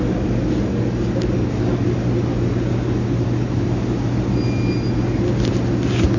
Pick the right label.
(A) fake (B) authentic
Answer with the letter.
B